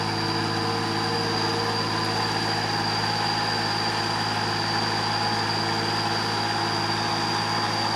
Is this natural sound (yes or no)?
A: yes